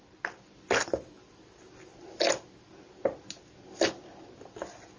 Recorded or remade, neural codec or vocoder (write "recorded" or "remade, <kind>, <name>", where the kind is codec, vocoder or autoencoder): recorded